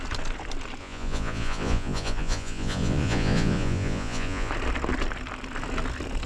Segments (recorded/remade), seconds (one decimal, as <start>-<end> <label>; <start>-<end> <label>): 0.0-0.8 recorded; 0.8-4.5 remade; 4.5-6.3 recorded